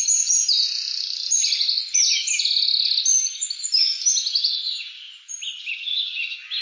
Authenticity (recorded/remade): recorded